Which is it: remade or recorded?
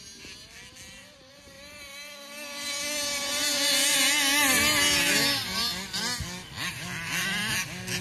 recorded